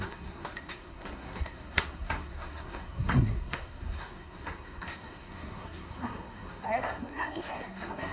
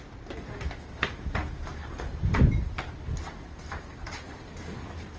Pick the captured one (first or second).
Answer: second